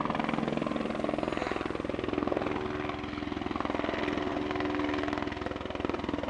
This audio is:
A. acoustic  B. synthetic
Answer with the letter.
A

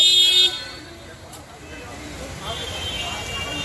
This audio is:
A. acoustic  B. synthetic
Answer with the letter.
A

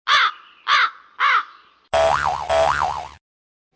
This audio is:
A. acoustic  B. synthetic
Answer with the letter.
A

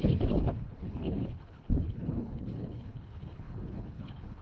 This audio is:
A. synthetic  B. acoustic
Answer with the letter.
A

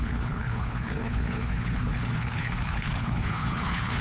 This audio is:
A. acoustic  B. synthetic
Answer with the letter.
B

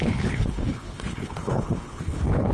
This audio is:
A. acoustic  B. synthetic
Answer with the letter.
B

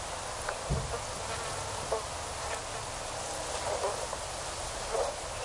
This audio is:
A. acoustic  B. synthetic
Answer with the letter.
A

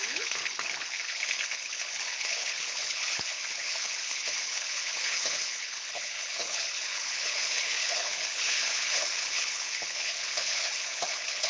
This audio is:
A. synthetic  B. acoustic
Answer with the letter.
A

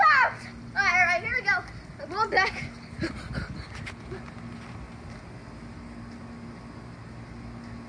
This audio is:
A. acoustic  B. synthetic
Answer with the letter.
A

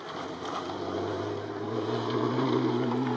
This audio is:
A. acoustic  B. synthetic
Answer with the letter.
A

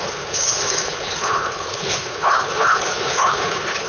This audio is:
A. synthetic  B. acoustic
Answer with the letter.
A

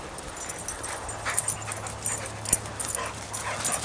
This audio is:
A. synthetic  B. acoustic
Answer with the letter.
B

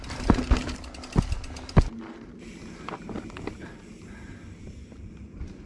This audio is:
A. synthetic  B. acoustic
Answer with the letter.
B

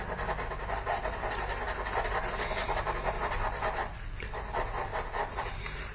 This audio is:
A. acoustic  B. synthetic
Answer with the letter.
A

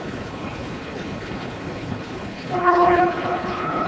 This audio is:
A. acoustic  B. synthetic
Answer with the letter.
B